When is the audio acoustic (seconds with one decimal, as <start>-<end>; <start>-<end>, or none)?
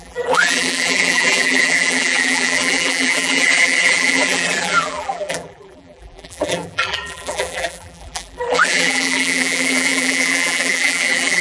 none